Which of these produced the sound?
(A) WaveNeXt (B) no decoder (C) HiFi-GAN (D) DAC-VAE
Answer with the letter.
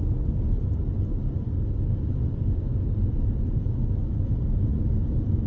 B